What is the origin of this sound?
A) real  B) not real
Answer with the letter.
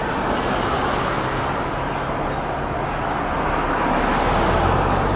A